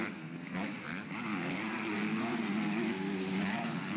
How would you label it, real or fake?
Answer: real